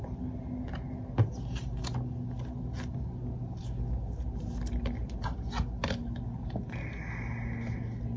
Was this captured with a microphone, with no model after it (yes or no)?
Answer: yes